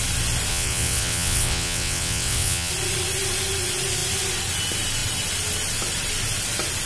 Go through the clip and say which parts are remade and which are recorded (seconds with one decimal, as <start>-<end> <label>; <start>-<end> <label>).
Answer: 0.0-0.5 recorded; 0.5-2.7 remade; 2.7-6.9 recorded